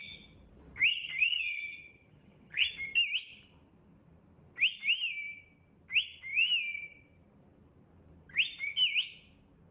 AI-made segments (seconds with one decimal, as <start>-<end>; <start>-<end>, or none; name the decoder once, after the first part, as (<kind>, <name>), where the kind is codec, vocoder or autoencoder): 0.9-2.7 (vocoder, HiFi-GAN)